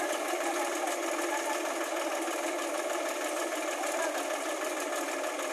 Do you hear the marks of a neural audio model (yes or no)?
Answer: no